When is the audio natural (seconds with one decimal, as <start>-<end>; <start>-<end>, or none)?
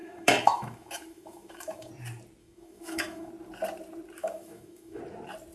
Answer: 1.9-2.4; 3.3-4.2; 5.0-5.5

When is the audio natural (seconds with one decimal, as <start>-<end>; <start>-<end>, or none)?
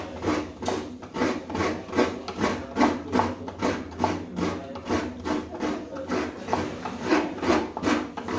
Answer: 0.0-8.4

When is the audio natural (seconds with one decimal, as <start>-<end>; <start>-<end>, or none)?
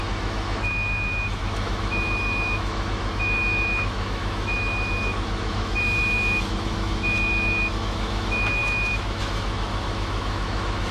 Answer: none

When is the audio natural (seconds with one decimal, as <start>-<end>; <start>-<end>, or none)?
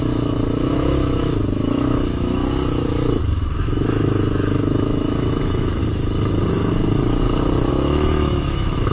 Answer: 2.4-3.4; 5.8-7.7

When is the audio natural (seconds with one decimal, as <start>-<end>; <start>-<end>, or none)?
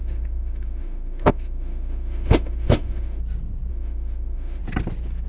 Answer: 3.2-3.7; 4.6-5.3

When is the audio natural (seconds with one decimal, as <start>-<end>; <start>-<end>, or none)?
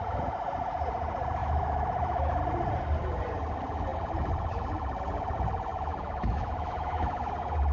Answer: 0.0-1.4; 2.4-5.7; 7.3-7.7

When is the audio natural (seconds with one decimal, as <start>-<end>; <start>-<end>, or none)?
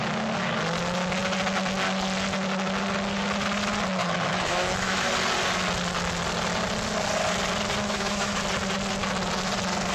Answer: 0.0-4.0; 5.1-7.8; 8.4-9.9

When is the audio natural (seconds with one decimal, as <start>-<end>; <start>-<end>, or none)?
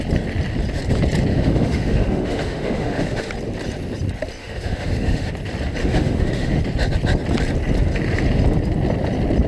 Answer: 0.0-1.3; 3.3-4.4; 5.3-5.8; 6.6-9.5